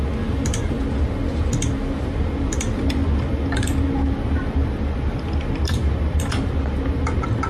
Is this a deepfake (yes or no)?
no